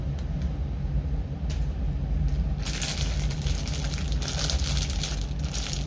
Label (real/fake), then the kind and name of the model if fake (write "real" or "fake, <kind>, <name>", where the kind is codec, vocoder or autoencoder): real